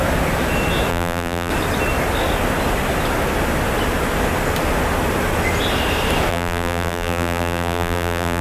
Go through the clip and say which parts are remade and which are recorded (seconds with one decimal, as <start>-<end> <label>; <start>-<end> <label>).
0.0-0.9 recorded; 0.9-1.5 remade; 1.5-6.3 recorded; 6.3-8.4 remade